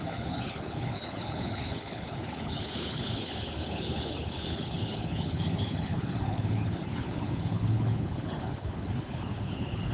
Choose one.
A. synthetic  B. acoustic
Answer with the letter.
A